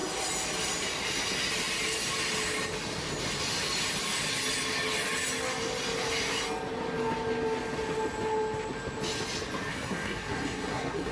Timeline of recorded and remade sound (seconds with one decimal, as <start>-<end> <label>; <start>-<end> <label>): 0.0-9.7 recorded; 9.7-11.1 remade